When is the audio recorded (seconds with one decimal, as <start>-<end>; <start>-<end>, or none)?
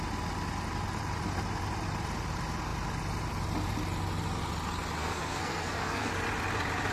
0.0-5.0; 6.1-6.9